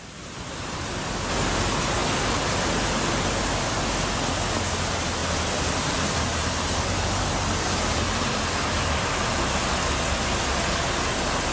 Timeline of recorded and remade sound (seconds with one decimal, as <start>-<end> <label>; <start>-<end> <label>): 0.0-11.5 recorded